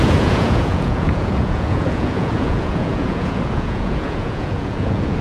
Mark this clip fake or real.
fake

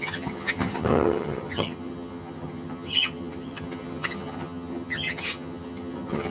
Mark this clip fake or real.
fake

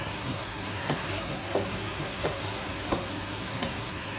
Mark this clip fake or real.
fake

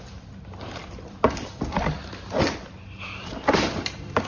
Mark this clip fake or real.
fake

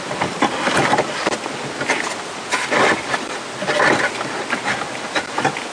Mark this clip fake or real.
real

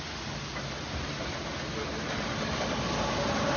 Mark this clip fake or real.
real